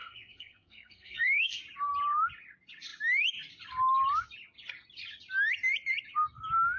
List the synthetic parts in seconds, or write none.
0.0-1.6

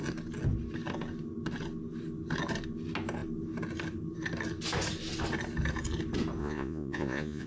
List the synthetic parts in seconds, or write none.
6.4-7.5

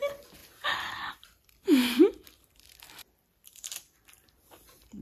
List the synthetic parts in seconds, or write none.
0.0-0.4; 1.1-5.0

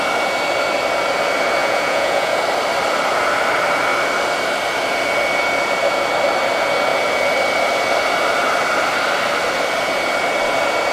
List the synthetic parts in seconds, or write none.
1.6-2.4

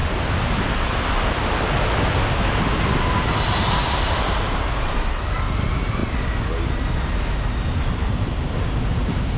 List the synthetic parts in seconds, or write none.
3.2-6.0; 6.8-9.4

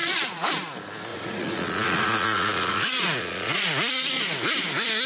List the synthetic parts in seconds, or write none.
0.0-0.5; 1.1-4.2

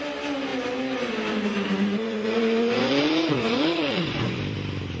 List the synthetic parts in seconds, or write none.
1.5-4.4